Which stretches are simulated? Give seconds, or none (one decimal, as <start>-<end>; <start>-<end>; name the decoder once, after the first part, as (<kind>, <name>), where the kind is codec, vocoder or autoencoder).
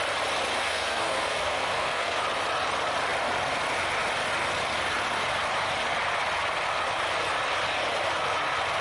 0.6-2.2 (codec, SNAC)